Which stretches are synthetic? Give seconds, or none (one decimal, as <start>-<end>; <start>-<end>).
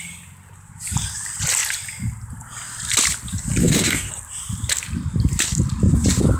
3.6-4.1